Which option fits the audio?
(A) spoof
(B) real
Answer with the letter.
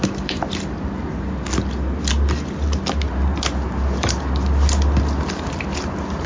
B